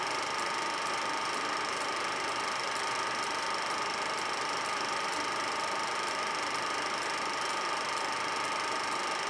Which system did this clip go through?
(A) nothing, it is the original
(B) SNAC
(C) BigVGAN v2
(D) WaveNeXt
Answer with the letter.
A